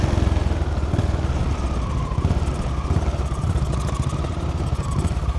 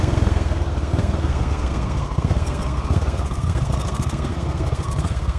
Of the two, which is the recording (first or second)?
first